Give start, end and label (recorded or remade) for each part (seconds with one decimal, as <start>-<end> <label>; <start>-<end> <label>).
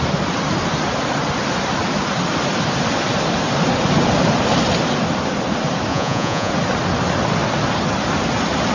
0.0-5.9 recorded; 5.9-6.5 remade; 6.5-8.7 recorded